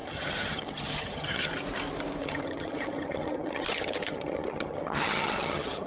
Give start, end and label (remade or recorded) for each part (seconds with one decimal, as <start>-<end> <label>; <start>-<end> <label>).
0.0-1.5 remade; 1.5-2.2 recorded; 2.2-5.9 remade